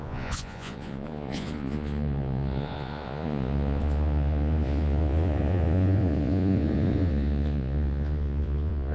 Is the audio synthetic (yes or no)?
yes